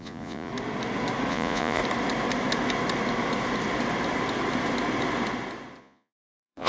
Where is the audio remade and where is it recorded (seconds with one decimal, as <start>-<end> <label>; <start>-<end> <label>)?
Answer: 0.0-0.5 remade; 0.5-1.3 recorded; 1.3-1.8 remade; 1.8-5.8 recorded; 5.8-6.7 remade